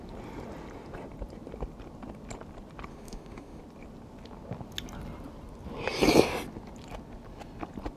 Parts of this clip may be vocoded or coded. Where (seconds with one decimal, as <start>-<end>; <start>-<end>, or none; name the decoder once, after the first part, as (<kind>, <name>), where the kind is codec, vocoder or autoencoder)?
2.9-3.6 (autoencoder, DAC-VAE)